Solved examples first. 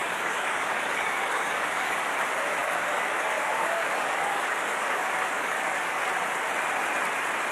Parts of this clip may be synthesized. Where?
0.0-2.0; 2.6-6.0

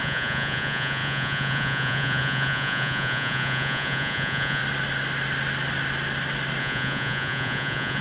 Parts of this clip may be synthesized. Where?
0.0-4.6; 6.6-8.0

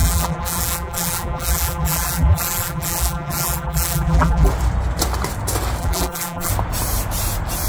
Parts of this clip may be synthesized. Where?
0.0-4.5; 5.8-6.5

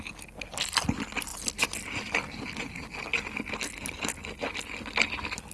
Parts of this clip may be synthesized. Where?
none